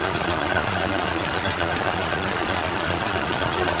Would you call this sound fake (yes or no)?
yes